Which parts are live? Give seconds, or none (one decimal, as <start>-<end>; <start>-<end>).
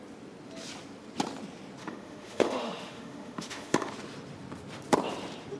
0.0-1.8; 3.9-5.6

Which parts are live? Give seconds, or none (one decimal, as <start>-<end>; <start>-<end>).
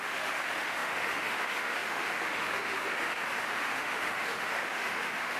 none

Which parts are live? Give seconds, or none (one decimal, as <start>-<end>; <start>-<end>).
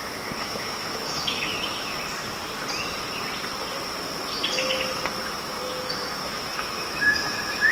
1.9-5.2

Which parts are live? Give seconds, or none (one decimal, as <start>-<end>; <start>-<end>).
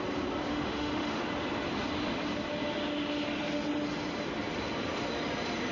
0.0-0.5; 1.2-5.7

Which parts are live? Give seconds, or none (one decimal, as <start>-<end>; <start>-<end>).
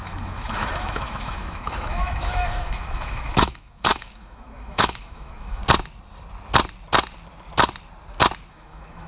5.6-8.5